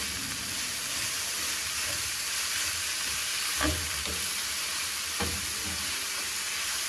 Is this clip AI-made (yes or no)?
no